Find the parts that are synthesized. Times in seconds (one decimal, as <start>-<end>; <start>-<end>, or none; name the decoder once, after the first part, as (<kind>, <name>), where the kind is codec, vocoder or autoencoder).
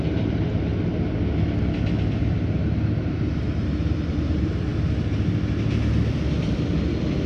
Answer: 0.0-0.7 (vocoder, BigVGAN v2); 4.1-4.7